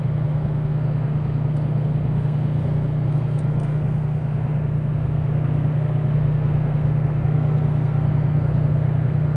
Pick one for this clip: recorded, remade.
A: remade